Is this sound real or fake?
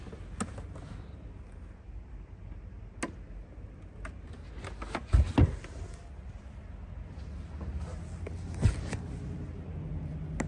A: real